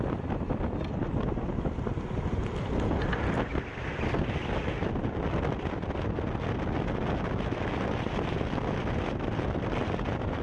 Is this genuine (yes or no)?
yes